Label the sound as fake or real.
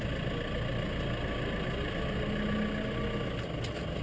real